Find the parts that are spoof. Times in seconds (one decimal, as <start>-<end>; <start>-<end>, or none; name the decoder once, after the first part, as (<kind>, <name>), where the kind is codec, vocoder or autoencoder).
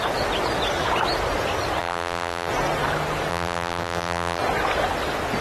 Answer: 1.8-2.5 (vocoder, BigVGAN v2); 3.3-4.4